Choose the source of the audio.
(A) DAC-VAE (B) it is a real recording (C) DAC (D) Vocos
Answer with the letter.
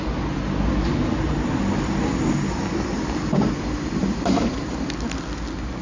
B